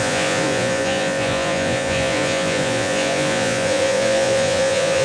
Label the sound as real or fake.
fake